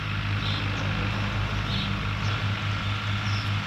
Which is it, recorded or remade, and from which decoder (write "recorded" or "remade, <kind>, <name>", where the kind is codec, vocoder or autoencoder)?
recorded